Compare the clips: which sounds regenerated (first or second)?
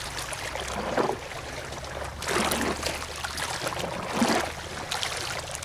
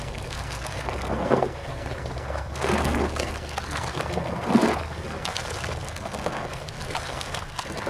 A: second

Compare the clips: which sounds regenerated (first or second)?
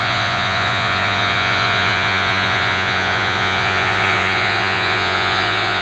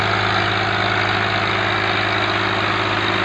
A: first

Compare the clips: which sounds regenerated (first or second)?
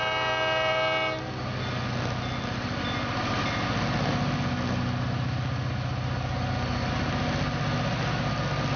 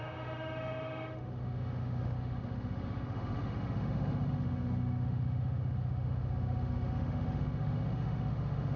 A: second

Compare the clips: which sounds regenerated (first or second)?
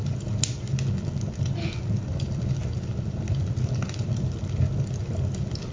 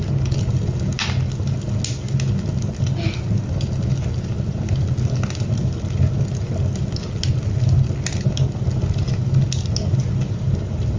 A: first